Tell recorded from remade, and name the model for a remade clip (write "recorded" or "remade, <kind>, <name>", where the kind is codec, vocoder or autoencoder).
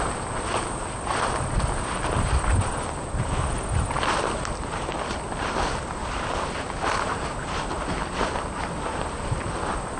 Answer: remade, vocoder, BigVGAN v2